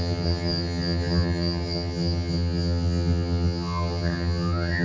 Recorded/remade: remade